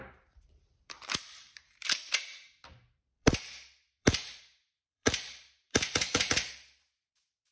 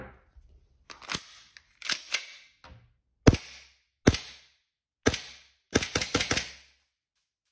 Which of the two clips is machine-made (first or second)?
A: first